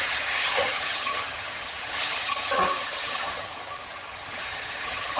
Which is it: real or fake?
fake